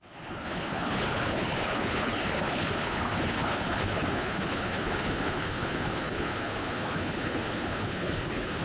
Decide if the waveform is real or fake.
fake